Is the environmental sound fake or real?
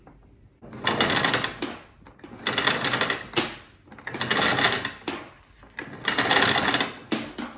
real